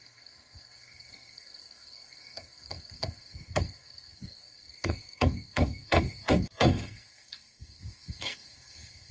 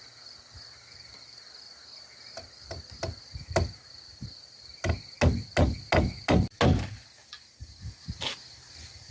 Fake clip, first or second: first